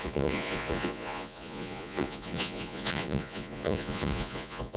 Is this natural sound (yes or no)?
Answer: no